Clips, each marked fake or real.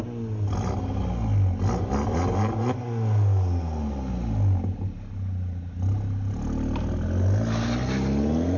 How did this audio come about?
real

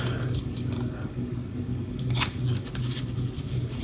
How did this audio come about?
fake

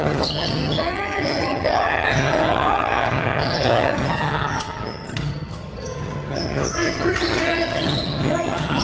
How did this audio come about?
fake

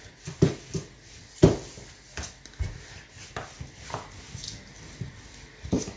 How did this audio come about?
real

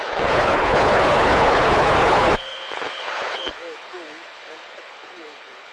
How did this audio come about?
fake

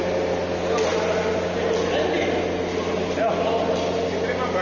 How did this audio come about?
real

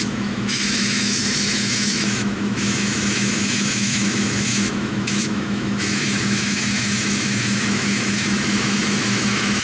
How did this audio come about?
fake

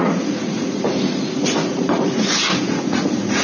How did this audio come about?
fake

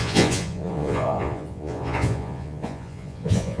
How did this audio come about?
fake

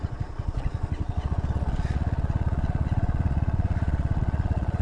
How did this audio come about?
fake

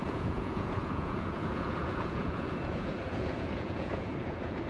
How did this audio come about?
fake